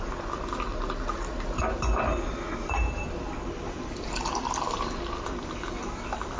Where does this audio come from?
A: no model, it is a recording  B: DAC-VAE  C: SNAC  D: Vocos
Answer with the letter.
A